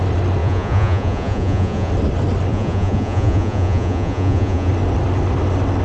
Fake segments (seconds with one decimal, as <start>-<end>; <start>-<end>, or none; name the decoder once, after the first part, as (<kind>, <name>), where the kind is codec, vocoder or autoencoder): 0.4-1.9 (vocoder, Vocos); 2.5-4.7